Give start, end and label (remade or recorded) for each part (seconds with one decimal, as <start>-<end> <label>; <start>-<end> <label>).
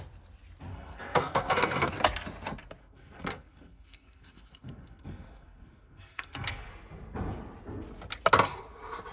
0.0-0.7 recorded; 0.7-1.9 remade; 1.9-2.8 recorded; 2.8-6.7 remade; 6.7-9.1 recorded